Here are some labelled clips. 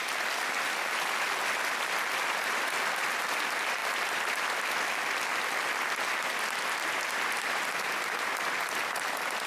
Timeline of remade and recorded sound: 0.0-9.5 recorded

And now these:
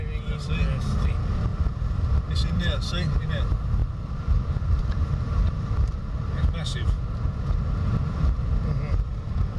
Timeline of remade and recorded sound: 0.0-1.5 recorded; 1.5-3.3 remade; 3.3-3.8 recorded; 3.8-7.4 remade; 7.4-9.6 recorded

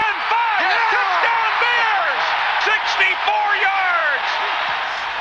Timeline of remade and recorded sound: 0.0-2.6 remade; 2.6-5.2 recorded

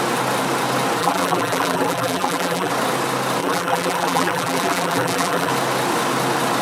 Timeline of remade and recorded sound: 0.0-1.0 recorded; 1.0-2.7 remade; 2.7-3.4 recorded; 3.4-5.5 remade; 5.5-6.6 recorded